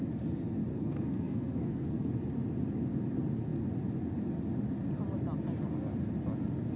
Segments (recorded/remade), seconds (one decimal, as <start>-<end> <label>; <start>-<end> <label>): 0.0-0.7 recorded; 0.7-2.1 remade; 2.1-6.8 recorded